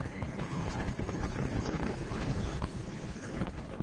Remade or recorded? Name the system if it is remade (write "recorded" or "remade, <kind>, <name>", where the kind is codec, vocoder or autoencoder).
remade, codec, HILCodec